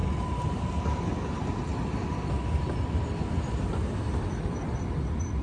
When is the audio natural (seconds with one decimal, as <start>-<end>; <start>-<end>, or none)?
0.0-5.4

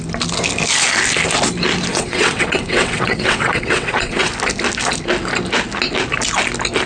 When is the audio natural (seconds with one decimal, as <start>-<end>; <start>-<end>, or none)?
0.0-1.9; 4.3-6.9

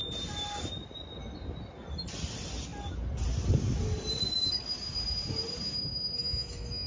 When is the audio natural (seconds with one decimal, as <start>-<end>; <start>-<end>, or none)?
0.0-6.2

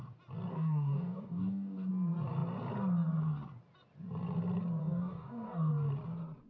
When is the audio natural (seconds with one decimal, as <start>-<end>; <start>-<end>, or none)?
0.0-0.5; 1.9-4.8; 5.7-6.5